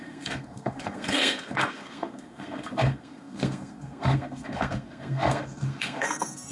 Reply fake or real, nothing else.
fake